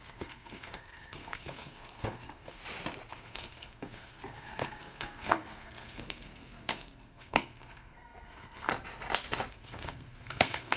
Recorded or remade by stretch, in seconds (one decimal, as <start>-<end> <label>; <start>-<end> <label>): 0.0-2.6 remade; 2.6-3.1 recorded; 3.1-8.7 remade; 8.7-9.5 recorded; 9.5-10.8 remade